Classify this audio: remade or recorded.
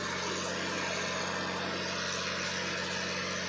recorded